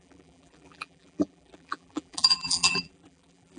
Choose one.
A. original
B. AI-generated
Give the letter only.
B